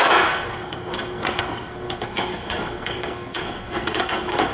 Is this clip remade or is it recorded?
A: remade